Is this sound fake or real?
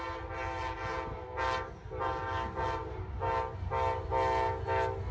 real